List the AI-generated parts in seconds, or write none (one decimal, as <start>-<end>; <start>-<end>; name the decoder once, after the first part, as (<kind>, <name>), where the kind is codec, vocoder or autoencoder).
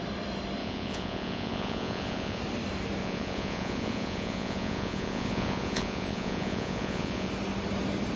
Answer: 0.6-2.4 (vocoder, Vocos); 3.0-7.3